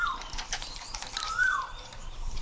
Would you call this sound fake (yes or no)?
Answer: yes